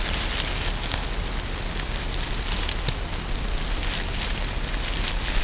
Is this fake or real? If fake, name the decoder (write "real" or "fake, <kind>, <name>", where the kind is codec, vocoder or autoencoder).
real